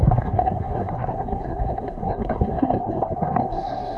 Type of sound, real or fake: fake